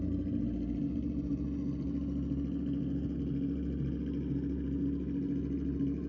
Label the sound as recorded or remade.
recorded